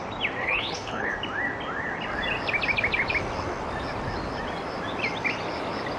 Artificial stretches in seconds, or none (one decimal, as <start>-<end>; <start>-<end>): 0.4-1.1